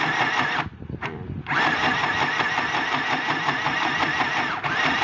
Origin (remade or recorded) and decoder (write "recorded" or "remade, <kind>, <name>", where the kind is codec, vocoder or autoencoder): recorded